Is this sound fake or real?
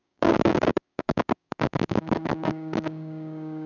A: fake